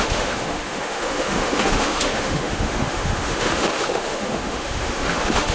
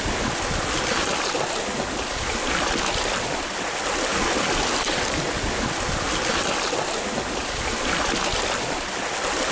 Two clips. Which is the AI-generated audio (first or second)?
first